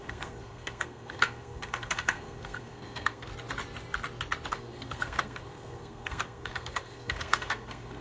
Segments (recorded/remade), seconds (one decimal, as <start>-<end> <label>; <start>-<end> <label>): 0.0-3.3 remade; 3.3-4.5 recorded; 4.5-8.0 remade